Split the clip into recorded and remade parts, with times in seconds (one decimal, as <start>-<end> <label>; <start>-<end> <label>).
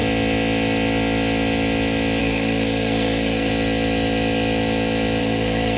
0.0-2.2 recorded; 2.2-3.5 remade; 3.5-5.2 recorded; 5.2-5.8 remade